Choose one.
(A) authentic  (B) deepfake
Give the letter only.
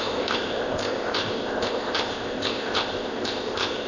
B